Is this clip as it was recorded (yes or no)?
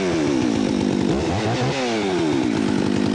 yes